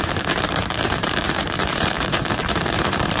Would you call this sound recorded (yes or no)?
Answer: no